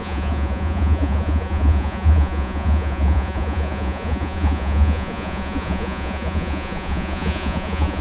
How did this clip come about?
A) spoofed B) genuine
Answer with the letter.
A